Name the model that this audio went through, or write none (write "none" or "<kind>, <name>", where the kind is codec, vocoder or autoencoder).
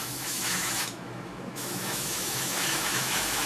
autoencoder, DAC-VAE